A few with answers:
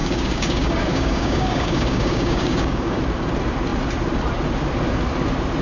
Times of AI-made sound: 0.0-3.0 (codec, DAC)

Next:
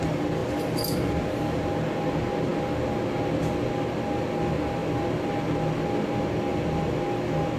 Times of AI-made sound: none

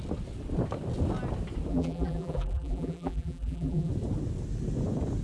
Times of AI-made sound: 1.7-3.9 (vocoder, BigVGAN v2)